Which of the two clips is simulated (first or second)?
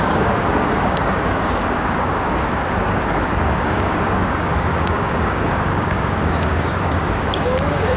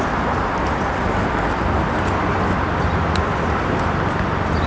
first